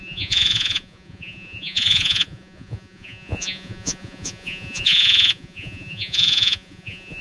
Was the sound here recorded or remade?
remade